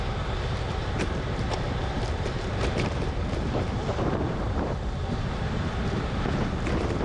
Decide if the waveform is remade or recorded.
remade